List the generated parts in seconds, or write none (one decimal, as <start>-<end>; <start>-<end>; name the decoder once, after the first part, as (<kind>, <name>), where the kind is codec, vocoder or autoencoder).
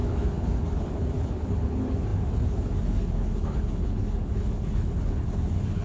0.0-5.8 (codec, HILCodec)